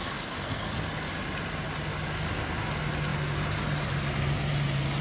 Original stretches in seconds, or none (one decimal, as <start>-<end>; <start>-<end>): 0.8-5.0